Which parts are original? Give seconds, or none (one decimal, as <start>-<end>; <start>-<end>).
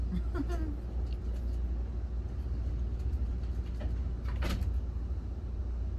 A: 0.0-6.0